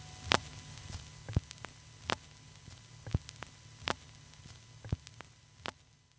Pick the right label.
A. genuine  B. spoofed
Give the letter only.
A